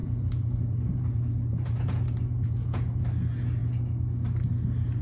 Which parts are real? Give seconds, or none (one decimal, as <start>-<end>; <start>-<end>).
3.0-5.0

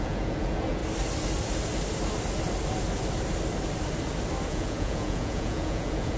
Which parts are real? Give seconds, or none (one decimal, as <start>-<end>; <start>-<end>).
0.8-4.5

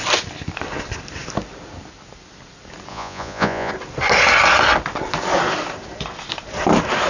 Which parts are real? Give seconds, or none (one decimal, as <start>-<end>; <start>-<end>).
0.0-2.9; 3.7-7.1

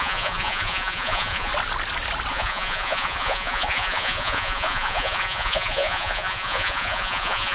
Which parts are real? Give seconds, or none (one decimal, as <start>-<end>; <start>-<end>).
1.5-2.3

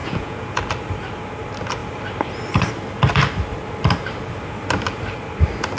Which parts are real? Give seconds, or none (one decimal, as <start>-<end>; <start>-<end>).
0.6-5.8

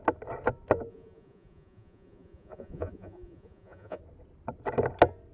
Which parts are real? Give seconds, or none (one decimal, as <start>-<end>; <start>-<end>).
0.0-0.9; 4.0-5.3

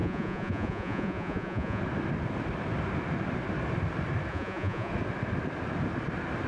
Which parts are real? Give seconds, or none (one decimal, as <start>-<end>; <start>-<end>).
1.8-4.3; 4.9-6.5

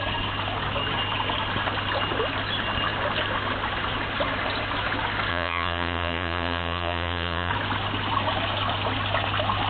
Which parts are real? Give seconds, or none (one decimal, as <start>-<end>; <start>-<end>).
0.0-5.3; 7.5-9.7